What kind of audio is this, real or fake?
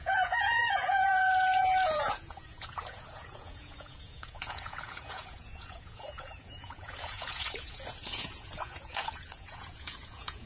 fake